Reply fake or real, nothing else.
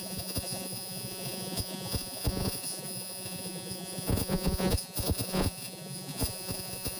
fake